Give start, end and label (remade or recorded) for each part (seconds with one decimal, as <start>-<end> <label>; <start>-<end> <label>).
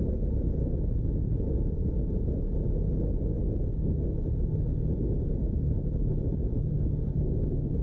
0.0-5.4 recorded; 5.4-6.0 remade; 6.0-7.8 recorded